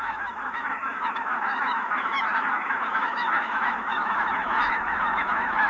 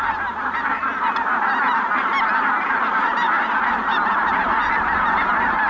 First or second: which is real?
second